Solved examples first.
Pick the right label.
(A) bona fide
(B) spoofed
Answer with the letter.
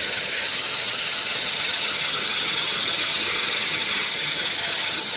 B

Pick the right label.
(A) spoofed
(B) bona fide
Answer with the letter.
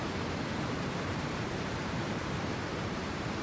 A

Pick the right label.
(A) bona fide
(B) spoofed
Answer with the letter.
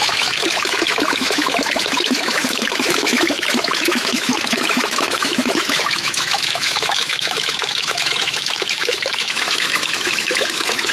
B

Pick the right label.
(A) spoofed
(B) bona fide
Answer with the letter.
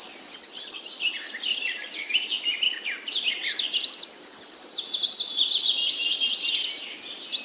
B